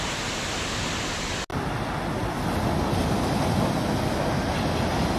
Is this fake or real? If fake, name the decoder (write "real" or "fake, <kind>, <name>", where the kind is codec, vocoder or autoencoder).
real